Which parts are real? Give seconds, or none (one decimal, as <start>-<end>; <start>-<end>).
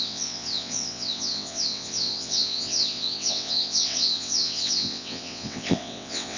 none